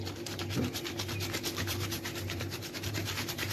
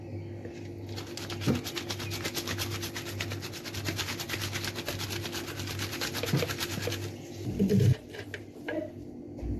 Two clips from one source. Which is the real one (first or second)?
second